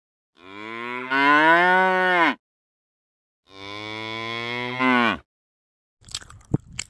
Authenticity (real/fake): real